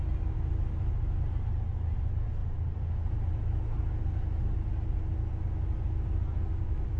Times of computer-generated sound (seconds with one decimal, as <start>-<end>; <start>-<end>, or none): none